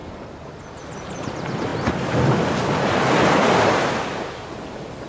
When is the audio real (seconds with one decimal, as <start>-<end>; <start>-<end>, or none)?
0.0-5.1

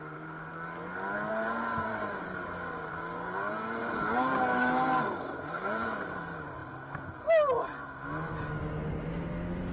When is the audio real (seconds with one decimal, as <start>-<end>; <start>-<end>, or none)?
0.5-1.3; 6.6-8.9

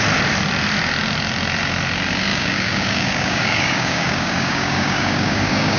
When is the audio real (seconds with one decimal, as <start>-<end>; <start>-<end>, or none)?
0.0-2.3

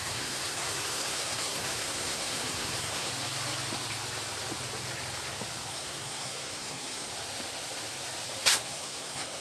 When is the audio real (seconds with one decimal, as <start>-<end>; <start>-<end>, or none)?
3.1-5.7; 7.1-8.4